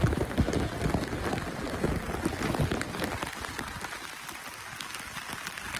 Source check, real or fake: real